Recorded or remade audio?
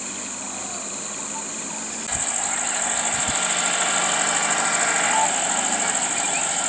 recorded